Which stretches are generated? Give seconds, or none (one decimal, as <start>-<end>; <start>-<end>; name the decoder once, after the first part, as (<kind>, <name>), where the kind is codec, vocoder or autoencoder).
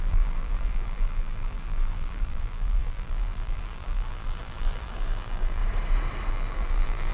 0.0-5.6 (vocoder, BigVGAN v2); 6.3-7.1